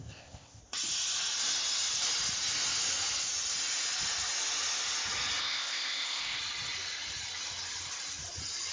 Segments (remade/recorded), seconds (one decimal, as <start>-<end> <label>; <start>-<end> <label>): 0.0-0.6 remade; 0.6-5.4 recorded; 5.4-6.4 remade; 6.4-8.7 recorded